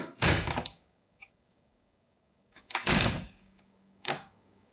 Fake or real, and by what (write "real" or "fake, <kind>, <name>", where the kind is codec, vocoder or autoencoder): fake, codec, DAC